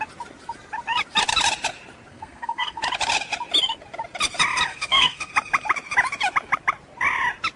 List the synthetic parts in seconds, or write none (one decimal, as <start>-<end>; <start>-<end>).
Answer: 2.1-2.8; 4.7-5.3